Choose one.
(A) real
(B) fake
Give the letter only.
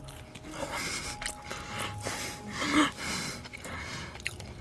A